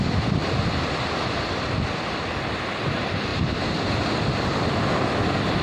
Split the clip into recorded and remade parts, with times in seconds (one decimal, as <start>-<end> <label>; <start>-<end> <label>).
0.0-5.6 recorded

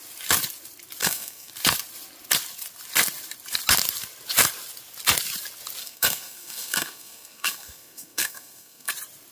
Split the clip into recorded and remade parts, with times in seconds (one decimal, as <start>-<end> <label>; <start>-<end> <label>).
0.0-1.0 recorded; 1.0-1.5 remade; 1.5-5.8 recorded; 5.8-8.9 remade; 8.9-9.3 recorded